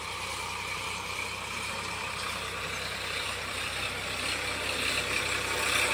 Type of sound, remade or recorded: remade